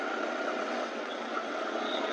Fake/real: fake